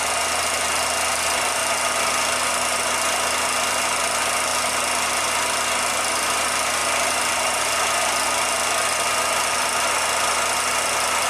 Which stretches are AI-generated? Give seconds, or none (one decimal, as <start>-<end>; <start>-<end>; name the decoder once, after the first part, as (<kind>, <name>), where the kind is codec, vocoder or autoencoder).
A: none